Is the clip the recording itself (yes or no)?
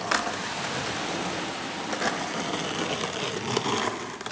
yes